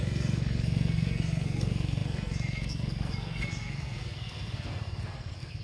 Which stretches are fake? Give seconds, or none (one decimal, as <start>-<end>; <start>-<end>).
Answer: 0.0-5.6